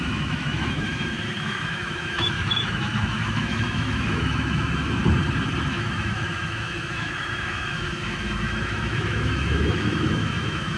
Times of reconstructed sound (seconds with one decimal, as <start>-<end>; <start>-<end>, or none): 0.0-5.0; 5.7-10.8